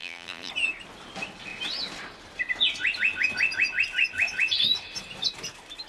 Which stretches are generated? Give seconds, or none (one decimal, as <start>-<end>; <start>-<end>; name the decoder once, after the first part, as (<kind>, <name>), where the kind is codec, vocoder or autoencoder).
0.0-0.5 (vocoder, BigVGAN v2)